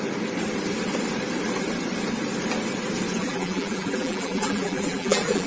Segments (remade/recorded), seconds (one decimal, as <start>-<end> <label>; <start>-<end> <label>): 0.0-3.2 recorded; 3.2-5.5 remade